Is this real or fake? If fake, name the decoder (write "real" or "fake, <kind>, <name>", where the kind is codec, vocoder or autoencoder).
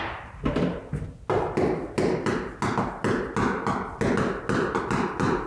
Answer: real